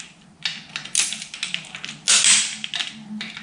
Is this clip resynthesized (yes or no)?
no